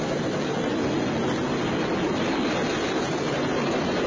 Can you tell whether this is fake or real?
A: real